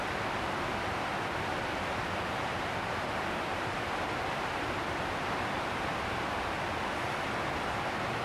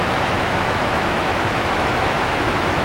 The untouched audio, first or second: first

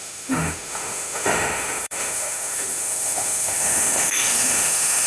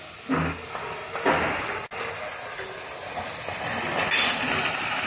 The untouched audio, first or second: second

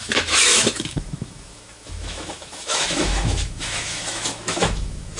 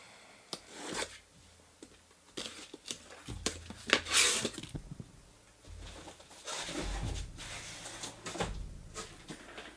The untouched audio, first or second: second